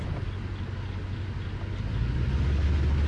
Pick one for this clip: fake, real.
real